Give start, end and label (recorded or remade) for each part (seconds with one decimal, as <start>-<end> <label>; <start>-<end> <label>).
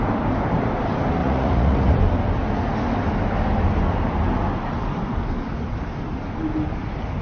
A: 0.0-1.2 recorded; 1.2-2.0 remade; 2.0-7.2 recorded